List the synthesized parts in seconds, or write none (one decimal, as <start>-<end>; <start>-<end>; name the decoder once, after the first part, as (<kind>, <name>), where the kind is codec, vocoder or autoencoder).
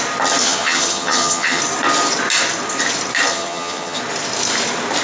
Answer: 0.4-1.6 (vocoder, HiFi-GAN); 3.3-4.0